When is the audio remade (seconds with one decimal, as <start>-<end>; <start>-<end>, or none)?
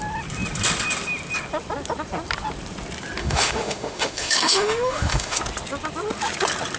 3.2-5.4